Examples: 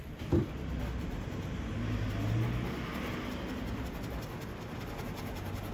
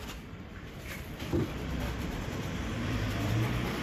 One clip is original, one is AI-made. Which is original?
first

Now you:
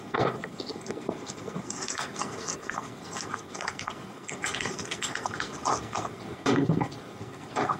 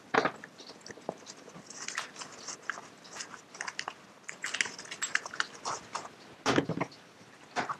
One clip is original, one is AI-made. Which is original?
second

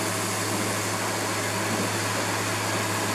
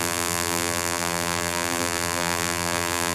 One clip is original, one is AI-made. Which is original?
first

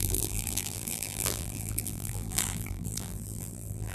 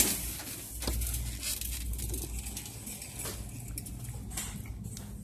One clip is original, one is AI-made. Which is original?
second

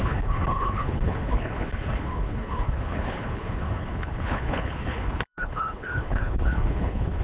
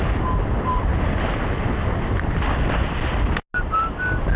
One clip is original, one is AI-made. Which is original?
second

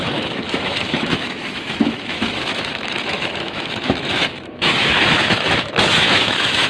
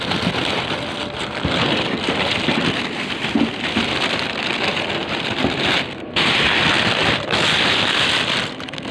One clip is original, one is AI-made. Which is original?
second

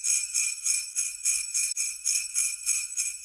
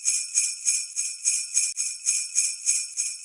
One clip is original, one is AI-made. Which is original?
second